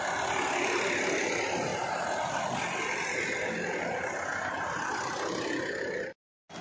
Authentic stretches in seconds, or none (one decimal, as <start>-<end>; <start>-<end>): 0.0-6.6